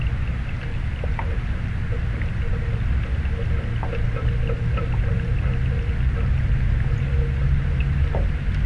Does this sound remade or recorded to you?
recorded